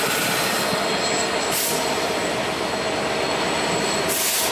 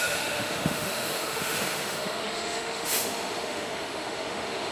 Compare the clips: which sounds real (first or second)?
first